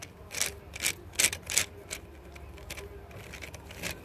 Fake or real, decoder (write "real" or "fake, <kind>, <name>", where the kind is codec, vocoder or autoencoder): real